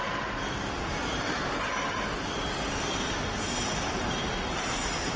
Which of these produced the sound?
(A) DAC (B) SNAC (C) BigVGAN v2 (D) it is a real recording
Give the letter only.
D